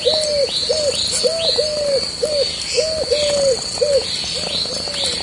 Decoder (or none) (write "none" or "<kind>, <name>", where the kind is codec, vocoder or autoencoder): none